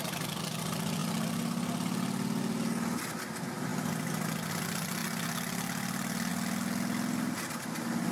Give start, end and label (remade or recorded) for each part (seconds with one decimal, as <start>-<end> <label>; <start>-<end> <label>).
0.0-8.1 recorded